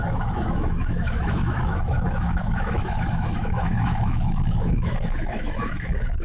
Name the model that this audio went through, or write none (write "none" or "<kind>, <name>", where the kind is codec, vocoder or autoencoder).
autoencoder, DAC-VAE